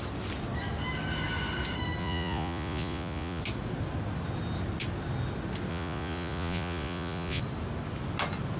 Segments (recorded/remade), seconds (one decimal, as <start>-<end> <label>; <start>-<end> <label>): 0.0-2.0 recorded; 2.0-3.4 remade; 3.4-5.7 recorded; 5.7-7.4 remade; 7.4-8.6 recorded